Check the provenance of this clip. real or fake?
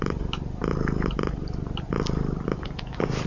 real